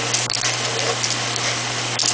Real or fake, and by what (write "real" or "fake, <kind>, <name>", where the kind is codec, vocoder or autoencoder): real